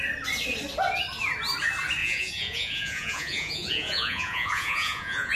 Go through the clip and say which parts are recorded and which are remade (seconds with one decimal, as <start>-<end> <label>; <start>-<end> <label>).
0.0-2.0 recorded; 2.0-5.3 remade